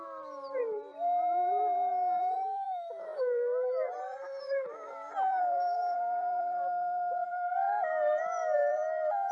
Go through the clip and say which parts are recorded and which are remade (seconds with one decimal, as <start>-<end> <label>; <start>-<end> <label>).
0.0-9.3 remade

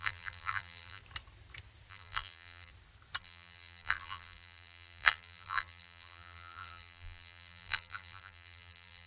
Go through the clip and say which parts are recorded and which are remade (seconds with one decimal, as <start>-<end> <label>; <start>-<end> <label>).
0.0-1.0 remade; 1.0-1.9 recorded; 1.9-2.7 remade; 2.7-3.2 recorded; 3.2-9.1 remade

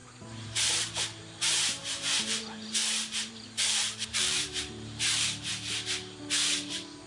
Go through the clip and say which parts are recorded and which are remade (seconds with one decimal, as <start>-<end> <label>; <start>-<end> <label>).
0.0-2.8 remade; 2.8-3.3 recorded; 3.3-5.5 remade; 5.5-7.1 recorded

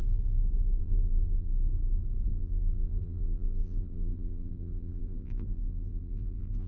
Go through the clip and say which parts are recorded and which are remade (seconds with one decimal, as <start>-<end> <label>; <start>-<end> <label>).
0.0-0.8 recorded; 0.8-1.5 remade; 1.5-2.4 recorded; 2.4-6.7 remade

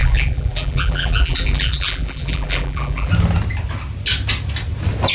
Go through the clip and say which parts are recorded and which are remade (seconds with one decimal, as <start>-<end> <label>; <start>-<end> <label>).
0.0-3.1 remade; 3.1-5.1 recorded

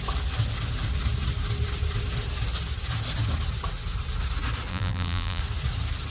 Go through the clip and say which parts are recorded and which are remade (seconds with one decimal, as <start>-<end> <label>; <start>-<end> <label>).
0.0-4.7 recorded; 4.7-5.4 remade; 5.4-6.1 recorded